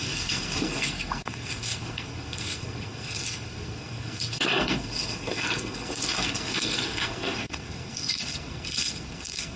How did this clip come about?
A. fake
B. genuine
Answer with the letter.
A